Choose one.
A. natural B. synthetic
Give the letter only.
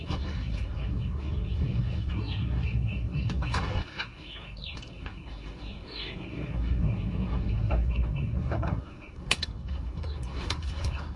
B